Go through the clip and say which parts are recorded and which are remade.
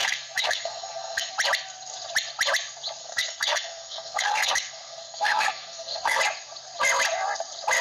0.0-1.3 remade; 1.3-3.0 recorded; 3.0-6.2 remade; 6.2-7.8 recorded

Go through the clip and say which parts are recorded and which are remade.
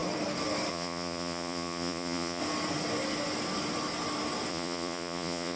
0.0-0.7 recorded; 0.7-2.4 remade; 2.4-4.5 recorded; 4.5-5.6 remade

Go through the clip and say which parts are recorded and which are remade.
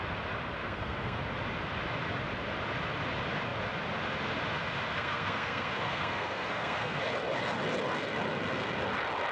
0.0-0.6 recorded; 0.6-1.2 remade; 1.2-4.9 recorded; 4.9-7.0 remade; 7.0-9.3 recorded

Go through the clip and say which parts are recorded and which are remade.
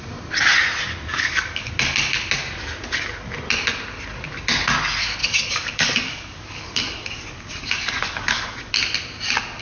0.0-1.1 recorded; 1.1-1.7 remade; 1.7-5.2 recorded; 5.2-8.7 remade; 8.7-9.6 recorded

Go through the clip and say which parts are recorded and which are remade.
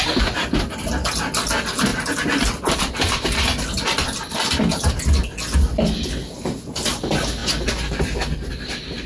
0.0-9.1 recorded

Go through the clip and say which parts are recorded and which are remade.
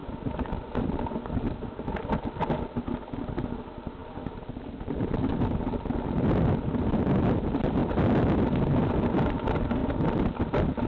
0.0-10.9 recorded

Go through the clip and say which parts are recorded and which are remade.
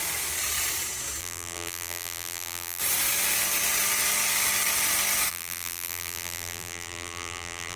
0.0-1.2 recorded; 1.2-2.8 remade; 2.8-5.3 recorded; 5.3-7.8 remade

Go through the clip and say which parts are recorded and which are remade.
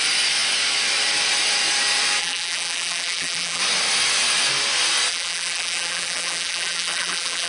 0.0-2.2 recorded; 2.2-3.6 remade; 3.6-5.1 recorded; 5.1-7.5 remade